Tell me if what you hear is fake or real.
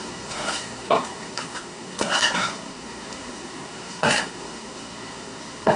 fake